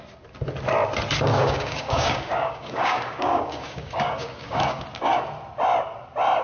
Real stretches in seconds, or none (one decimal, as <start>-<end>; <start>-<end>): 0.0-1.3; 5.1-6.4